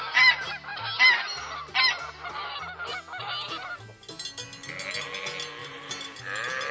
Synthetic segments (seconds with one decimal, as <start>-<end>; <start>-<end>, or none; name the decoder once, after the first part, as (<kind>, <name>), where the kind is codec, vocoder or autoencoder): 5.6-6.2 (vocoder, BigVGAN v2)